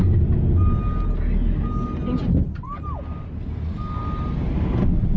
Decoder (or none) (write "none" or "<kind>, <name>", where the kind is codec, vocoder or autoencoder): none